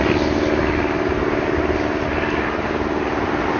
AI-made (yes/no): no